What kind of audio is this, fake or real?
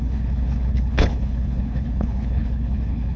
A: fake